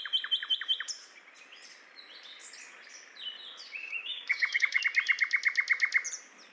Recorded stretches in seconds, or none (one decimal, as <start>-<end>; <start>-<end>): 0.0-3.8; 4.8-6.5